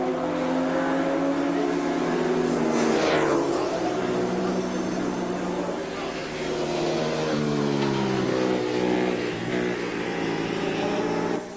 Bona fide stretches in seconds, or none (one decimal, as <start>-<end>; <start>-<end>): 0.0-3.3; 4.5-9.9